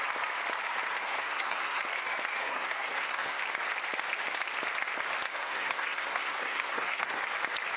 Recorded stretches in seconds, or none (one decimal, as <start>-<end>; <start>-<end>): 0.0-1.0; 1.8-2.4; 3.4-5.3; 7.2-7.8